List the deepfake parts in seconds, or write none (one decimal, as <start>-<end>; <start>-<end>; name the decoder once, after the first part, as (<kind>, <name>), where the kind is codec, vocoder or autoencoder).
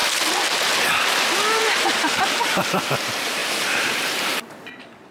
1.6-5.1 (vocoder, BigVGAN v2)